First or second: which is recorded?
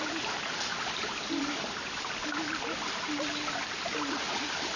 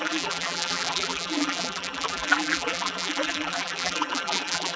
first